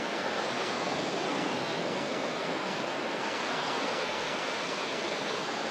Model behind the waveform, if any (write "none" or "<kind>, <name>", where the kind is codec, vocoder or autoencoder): codec, SNAC